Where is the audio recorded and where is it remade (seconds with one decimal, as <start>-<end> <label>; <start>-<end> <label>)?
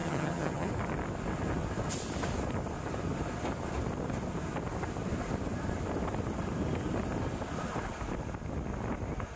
0.0-0.7 remade; 0.7-9.4 recorded